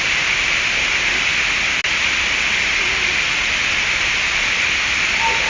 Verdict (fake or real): real